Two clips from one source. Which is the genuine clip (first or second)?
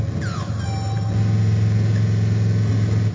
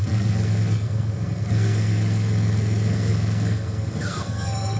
first